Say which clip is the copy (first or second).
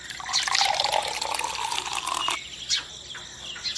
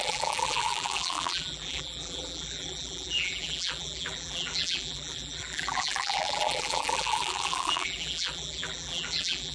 second